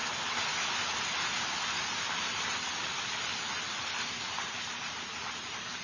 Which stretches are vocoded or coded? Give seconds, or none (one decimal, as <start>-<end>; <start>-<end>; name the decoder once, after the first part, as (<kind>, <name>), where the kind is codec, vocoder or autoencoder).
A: none